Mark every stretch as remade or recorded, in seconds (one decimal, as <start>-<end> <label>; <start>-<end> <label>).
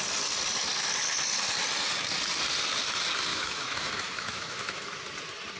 0.0-3.3 recorded; 3.3-5.0 remade; 5.0-5.6 recorded